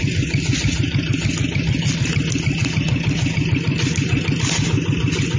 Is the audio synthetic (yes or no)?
no